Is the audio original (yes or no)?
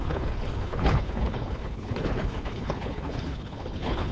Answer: no